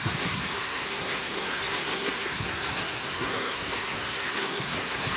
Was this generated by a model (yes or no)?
yes